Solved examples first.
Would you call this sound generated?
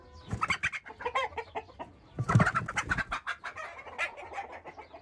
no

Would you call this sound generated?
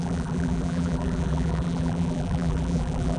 yes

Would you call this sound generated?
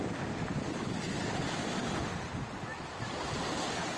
no